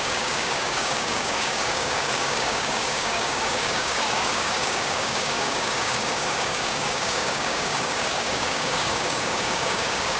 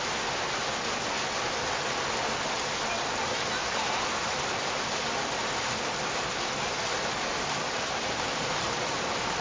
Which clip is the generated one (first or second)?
first